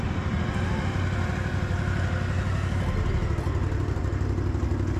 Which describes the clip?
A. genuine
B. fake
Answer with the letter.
A